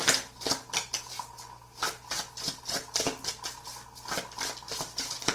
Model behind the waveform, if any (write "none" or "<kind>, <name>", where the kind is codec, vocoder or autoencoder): none